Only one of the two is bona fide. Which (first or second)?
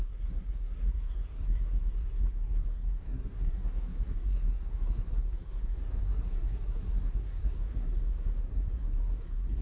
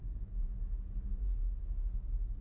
second